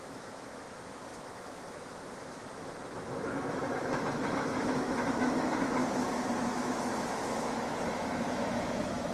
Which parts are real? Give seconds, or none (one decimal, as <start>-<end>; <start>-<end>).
5.8-6.5